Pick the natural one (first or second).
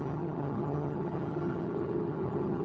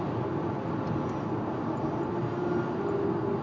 second